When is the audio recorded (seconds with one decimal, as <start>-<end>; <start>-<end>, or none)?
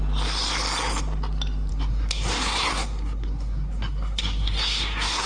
0.0-1.7